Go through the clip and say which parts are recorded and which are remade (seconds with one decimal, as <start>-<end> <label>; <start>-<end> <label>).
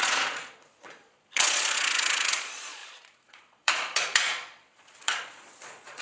0.0-6.0 remade